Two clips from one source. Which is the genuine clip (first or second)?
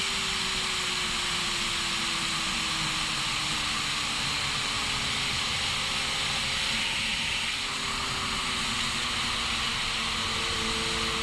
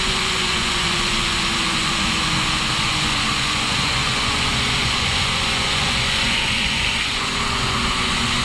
first